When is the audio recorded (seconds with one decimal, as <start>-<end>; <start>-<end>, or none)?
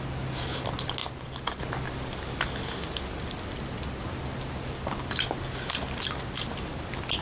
0.0-7.2